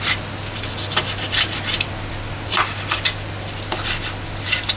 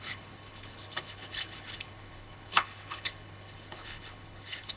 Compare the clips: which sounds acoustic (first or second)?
first